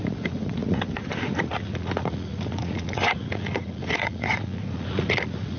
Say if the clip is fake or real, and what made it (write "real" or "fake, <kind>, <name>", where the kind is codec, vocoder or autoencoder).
fake, vocoder, Vocos